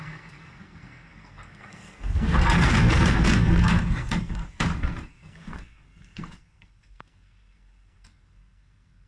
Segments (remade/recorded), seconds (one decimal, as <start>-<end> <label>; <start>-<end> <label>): 0.0-9.1 remade